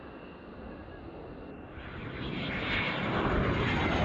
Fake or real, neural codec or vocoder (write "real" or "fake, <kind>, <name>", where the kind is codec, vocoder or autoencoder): real